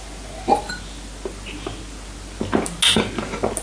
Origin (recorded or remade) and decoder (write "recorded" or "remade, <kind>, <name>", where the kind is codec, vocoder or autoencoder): recorded